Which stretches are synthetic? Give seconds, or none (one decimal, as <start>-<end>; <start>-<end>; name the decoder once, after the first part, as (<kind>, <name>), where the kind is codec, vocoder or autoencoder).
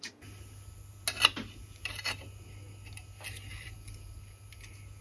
3.5-4.5 (vocoder, BigVGAN v2)